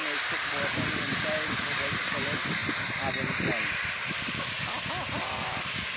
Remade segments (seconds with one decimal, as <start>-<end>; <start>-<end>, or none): 0.0-2.0; 2.6-5.2